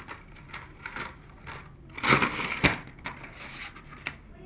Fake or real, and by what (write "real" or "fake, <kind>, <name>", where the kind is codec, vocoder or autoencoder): real